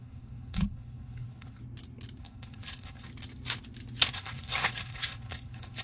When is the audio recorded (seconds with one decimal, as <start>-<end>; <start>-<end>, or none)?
1.6-2.2; 3.1-4.1